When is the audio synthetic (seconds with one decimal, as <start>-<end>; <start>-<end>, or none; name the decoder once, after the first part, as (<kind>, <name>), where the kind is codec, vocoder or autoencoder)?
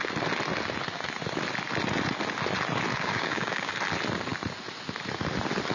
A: 2.9-3.7 (codec, DAC)